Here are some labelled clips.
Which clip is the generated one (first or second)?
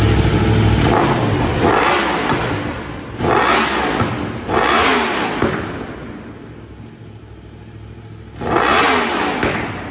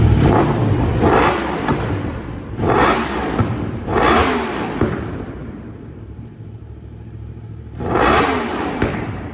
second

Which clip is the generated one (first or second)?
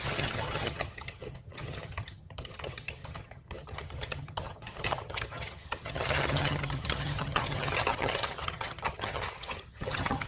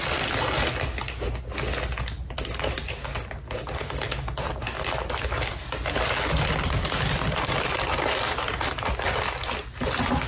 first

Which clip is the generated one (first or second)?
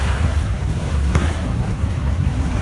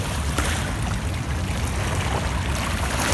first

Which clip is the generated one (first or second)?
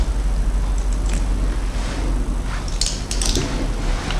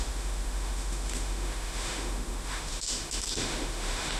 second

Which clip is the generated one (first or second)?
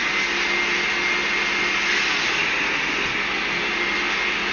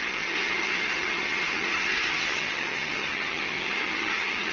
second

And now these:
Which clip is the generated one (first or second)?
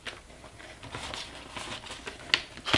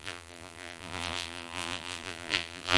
second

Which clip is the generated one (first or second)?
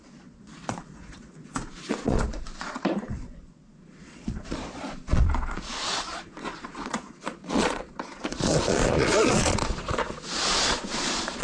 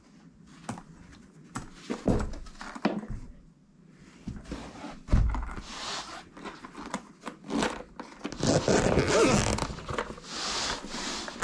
first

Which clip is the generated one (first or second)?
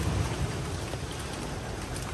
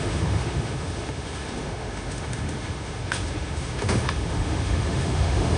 second